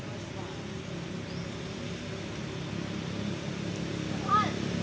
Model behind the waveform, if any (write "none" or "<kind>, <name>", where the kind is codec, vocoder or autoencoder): none